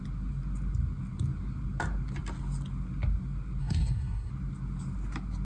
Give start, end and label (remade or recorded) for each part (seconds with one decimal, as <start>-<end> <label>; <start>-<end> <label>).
0.0-3.6 recorded; 3.6-4.3 remade; 4.3-5.4 recorded

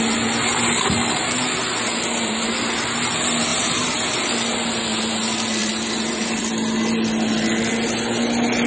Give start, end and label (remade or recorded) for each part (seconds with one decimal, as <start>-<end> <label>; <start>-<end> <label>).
0.0-3.5 recorded; 3.5-4.2 remade; 4.2-5.6 recorded; 5.6-6.5 remade; 6.5-8.7 recorded

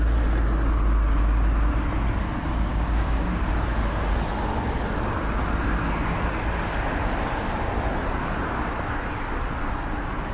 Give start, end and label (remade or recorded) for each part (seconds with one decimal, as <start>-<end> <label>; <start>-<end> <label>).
0.0-2.7 recorded; 2.7-3.4 remade; 3.4-10.3 recorded

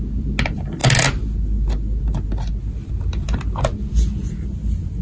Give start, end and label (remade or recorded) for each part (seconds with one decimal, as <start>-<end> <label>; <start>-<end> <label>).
0.0-5.0 recorded

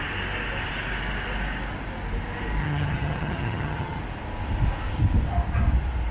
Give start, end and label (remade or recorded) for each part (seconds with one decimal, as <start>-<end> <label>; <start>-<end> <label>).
0.0-2.6 recorded; 2.6-4.0 remade; 4.0-6.1 recorded

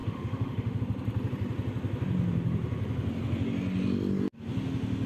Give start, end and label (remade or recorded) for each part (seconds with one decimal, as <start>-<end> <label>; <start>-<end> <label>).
0.0-0.8 remade; 0.8-5.1 recorded